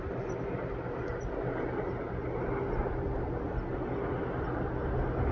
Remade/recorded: recorded